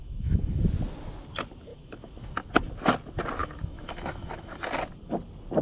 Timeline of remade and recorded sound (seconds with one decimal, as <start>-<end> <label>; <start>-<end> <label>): 0.0-0.7 remade; 0.7-1.7 recorded; 1.7-2.5 remade; 2.5-3.4 recorded; 3.4-4.5 remade; 4.5-5.6 recorded